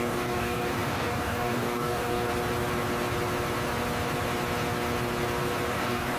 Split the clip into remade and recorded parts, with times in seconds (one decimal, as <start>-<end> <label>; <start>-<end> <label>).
0.0-2.3 remade; 2.3-5.7 recorded; 5.7-6.2 remade